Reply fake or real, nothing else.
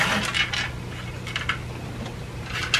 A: real